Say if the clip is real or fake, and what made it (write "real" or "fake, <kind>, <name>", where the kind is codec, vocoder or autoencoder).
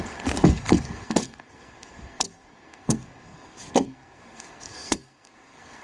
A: fake, codec, SNAC